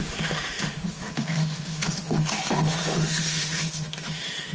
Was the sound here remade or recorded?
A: remade